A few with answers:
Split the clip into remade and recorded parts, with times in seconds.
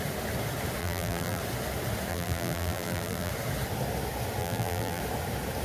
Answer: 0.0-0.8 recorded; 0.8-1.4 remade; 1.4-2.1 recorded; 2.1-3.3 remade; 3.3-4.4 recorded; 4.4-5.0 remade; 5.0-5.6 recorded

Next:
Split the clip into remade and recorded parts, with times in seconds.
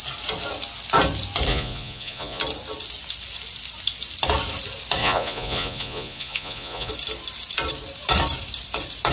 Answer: 0.0-1.5 recorded; 1.5-2.4 remade; 2.4-5.0 recorded; 5.0-6.9 remade; 6.9-9.1 recorded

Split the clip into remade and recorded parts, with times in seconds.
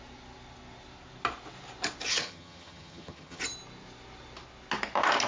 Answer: 0.0-2.1 recorded; 2.1-3.4 remade; 3.4-5.3 recorded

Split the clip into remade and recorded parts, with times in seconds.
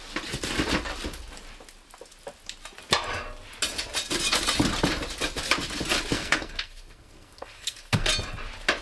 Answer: 0.0-6.1 recorded; 6.1-8.1 remade; 8.1-8.8 recorded